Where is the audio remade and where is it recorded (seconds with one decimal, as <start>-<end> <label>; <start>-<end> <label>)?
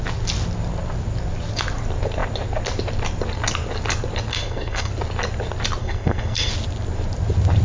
0.0-4.3 recorded; 4.3-4.9 remade; 4.9-5.8 recorded; 5.8-6.5 remade; 6.5-7.6 recorded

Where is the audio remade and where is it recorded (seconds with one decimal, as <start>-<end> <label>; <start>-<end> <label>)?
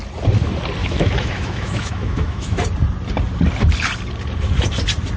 0.0-0.8 recorded; 0.8-2.6 remade; 2.6-5.2 recorded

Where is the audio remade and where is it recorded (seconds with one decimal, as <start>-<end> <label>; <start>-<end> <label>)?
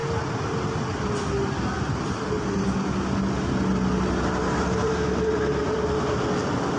0.0-6.8 recorded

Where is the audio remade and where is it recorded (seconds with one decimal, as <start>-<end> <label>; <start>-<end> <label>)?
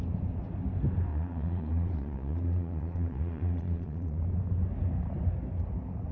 0.0-1.1 recorded; 1.1-4.2 remade; 4.2-6.1 recorded